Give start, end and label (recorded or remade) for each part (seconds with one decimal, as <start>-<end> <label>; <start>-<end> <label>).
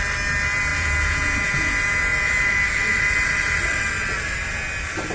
0.0-0.7 recorded; 0.7-2.3 remade; 2.3-5.1 recorded